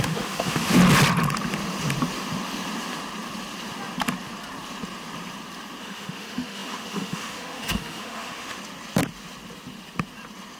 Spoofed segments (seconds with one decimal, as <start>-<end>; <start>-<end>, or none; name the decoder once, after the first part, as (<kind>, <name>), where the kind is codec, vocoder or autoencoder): 0.0-0.8 (autoencoder, DAC-VAE); 5.8-8.6